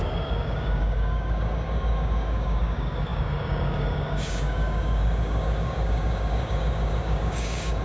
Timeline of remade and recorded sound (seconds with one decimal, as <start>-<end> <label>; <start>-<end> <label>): 0.0-7.8 remade